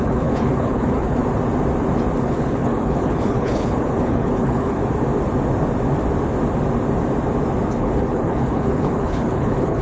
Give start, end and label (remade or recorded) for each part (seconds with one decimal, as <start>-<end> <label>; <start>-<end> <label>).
0.0-1.2 remade; 1.2-2.2 recorded; 2.2-4.8 remade; 4.8-7.8 recorded; 7.8-9.8 remade